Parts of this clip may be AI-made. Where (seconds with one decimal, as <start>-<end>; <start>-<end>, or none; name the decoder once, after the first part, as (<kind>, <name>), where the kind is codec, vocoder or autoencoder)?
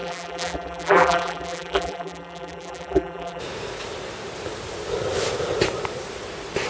0.0-3.4 (vocoder, BigVGAN v2)